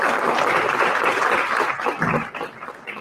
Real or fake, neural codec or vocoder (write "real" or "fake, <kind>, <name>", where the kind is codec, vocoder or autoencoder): real